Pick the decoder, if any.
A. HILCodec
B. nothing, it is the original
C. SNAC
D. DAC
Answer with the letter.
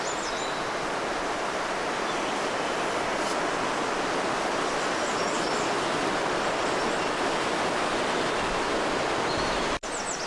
B